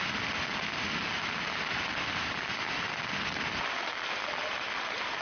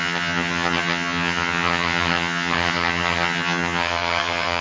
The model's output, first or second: second